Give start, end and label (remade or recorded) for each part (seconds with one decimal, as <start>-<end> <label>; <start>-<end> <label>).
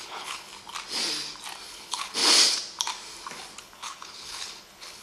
0.0-0.5 remade; 0.5-1.7 recorded; 1.7-2.2 remade; 2.2-3.6 recorded; 3.6-5.0 remade